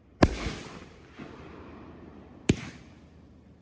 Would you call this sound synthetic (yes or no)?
yes